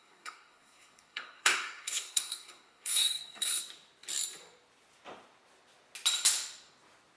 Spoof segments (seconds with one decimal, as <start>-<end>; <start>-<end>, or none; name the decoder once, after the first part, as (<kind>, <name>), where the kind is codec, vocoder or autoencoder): 0.0-3.6 (codec, SNAC)